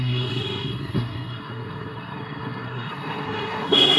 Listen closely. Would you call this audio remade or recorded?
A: remade